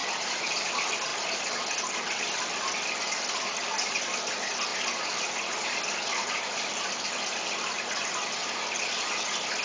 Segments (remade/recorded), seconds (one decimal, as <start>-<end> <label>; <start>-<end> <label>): 0.0-9.6 recorded